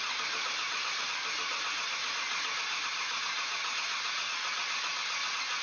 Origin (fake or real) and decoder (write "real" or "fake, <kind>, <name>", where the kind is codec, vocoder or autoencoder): real